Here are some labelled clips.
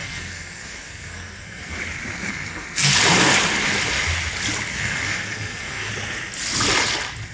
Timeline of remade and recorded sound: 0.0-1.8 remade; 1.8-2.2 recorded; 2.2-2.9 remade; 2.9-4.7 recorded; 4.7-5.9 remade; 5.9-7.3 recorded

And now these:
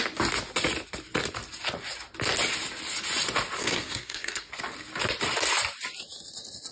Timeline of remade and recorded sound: 0.0-3.6 recorded; 3.6-4.5 remade; 4.5-6.7 recorded

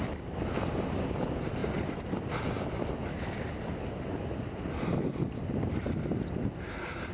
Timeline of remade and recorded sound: 0.0-7.1 recorded

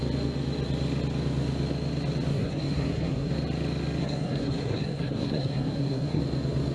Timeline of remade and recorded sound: 0.0-2.3 recorded; 2.3-3.3 remade; 3.3-4.0 recorded; 4.0-6.2 remade; 6.2-6.7 recorded